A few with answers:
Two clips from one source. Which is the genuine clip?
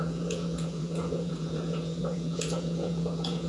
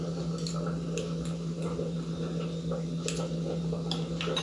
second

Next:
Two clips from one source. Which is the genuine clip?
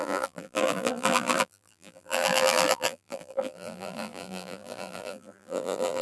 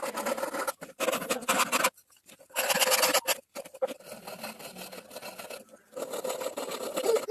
second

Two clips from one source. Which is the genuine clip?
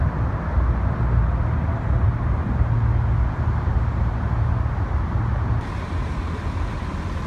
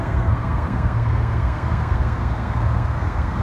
first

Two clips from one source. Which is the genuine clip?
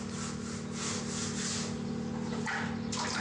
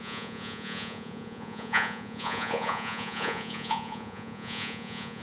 first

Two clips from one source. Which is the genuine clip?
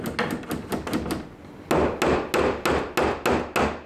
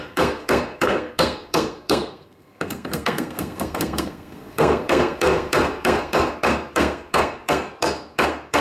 first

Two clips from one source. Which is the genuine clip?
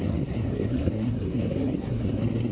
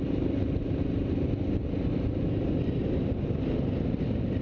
second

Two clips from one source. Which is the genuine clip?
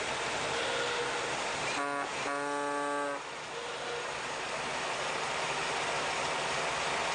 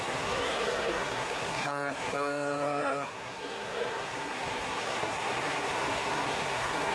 first